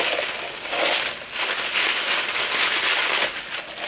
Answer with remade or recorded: recorded